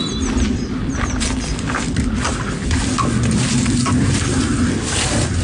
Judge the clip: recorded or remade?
recorded